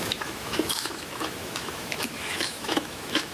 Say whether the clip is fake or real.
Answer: fake